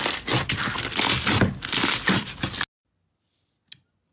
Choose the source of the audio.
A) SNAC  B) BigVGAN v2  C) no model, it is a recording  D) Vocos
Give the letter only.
C